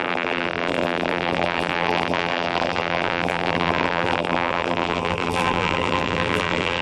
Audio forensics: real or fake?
fake